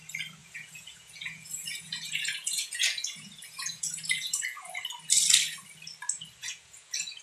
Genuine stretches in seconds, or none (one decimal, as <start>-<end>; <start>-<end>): 0.0-0.4; 4.7-6.4